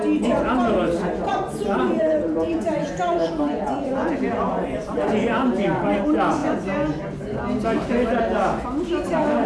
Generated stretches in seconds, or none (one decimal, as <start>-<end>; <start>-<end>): 1.3-4.1; 4.5-5.1